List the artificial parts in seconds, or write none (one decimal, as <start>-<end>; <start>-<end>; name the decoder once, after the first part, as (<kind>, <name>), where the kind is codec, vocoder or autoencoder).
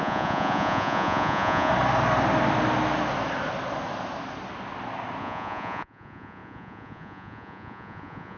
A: 0.0-1.7 (vocoder, Vocos); 5.2-8.4